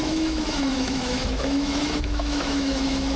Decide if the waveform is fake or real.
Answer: fake